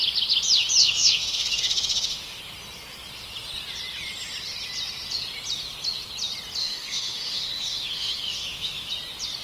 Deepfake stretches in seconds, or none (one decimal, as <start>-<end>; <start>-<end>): 0.8-2.4; 6.6-8.9